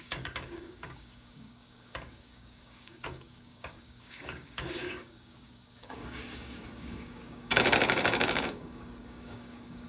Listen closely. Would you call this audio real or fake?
fake